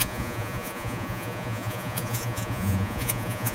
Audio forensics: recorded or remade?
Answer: remade